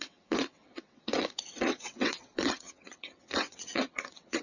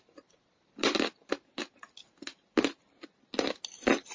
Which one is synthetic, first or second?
first